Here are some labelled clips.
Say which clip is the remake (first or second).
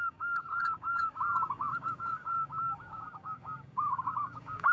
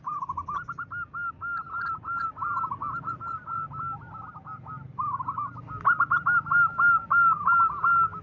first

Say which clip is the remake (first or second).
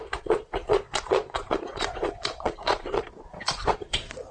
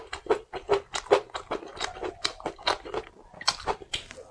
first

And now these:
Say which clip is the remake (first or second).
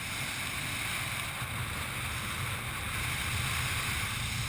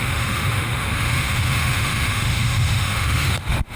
second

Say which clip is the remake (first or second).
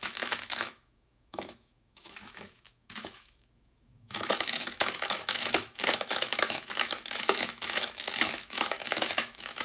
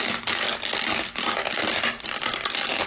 first